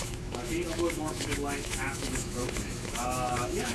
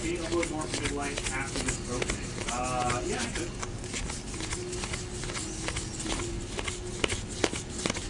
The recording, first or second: second